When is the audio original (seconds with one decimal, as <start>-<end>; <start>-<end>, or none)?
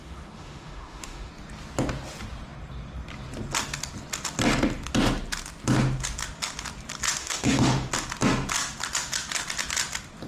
1.3-7.2; 7.9-10.3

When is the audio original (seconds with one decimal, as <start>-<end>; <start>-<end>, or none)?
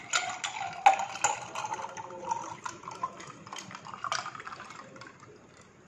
0.0-1.8; 5.3-5.9